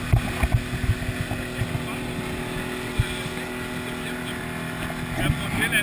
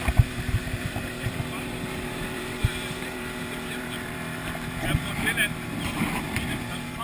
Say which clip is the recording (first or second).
first